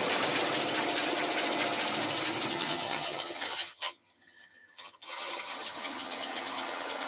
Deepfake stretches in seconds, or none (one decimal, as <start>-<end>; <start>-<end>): 2.5-7.1